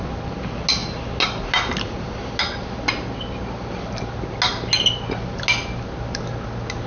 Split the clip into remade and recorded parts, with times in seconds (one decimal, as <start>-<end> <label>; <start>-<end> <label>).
0.0-6.9 recorded